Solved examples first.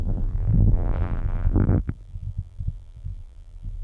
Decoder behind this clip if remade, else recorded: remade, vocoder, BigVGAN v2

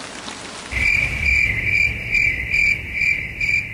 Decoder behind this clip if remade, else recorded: recorded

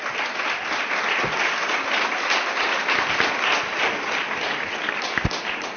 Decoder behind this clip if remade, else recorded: recorded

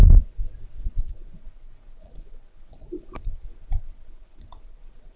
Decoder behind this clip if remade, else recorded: remade, vocoder, Vocos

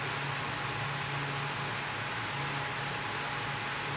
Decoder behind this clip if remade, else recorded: recorded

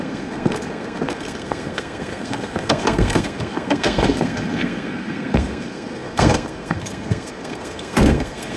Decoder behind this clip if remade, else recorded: remade, codec, SNAC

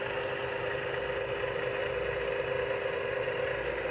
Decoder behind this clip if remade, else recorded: recorded